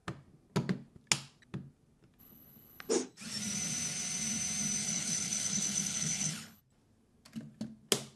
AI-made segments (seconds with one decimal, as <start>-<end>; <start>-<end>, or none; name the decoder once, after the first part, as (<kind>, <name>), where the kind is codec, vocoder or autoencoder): 2.2-2.9 (codec, HILCodec); 4.8-6.6